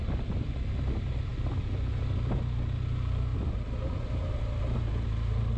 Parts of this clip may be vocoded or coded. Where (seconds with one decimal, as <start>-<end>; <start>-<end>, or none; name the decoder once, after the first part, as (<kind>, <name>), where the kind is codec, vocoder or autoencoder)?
3.3-4.1 (vocoder, BigVGAN v2)

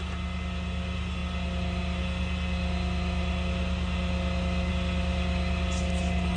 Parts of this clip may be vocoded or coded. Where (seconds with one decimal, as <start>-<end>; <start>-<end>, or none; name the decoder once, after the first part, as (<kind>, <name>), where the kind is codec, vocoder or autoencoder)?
none

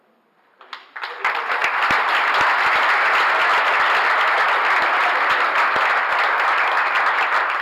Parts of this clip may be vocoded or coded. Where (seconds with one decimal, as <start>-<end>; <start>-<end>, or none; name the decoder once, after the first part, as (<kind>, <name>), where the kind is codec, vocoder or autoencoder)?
none

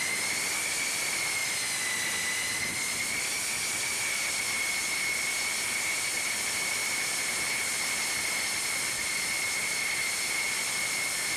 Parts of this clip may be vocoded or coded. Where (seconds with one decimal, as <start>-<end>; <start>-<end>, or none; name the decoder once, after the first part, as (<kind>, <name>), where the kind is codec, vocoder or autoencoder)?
none